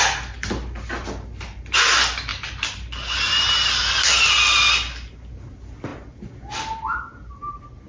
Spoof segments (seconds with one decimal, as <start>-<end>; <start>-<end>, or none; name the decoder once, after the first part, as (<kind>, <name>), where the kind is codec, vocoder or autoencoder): none